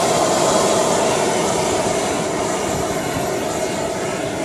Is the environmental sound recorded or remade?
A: recorded